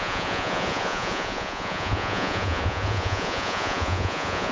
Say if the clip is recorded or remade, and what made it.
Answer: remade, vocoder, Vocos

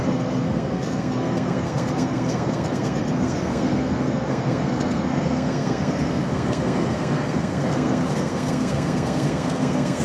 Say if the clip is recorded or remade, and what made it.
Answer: remade, codec, SNAC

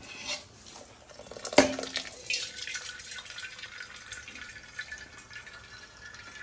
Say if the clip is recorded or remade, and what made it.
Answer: recorded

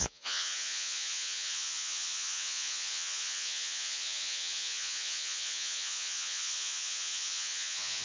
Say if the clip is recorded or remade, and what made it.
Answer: remade, vocoder, Vocos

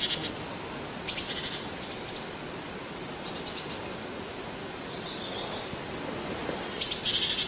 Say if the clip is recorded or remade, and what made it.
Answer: recorded